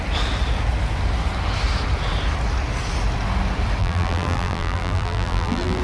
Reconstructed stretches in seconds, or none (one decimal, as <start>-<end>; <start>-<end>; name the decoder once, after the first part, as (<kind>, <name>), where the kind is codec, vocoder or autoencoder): 3.8-5.8 (vocoder, BigVGAN v2)